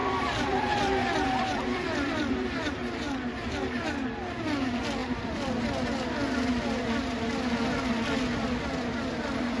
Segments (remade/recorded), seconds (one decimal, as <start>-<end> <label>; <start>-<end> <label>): 0.0-2.7 remade; 2.7-5.0 recorded; 5.0-5.5 remade; 5.5-9.6 recorded